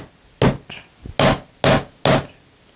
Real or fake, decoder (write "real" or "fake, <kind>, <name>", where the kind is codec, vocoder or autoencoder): real